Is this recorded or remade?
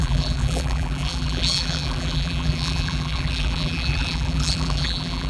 remade